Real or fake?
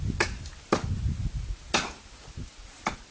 real